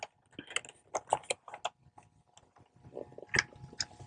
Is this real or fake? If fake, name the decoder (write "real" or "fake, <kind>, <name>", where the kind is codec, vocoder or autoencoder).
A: real